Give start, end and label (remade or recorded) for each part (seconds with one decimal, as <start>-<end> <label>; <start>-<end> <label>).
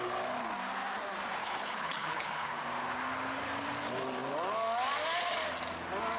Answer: 0.0-1.4 recorded; 1.4-2.6 remade; 2.6-6.2 recorded